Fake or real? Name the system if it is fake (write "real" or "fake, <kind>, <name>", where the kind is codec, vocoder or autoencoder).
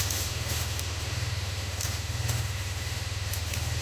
fake, autoencoder, DAC-VAE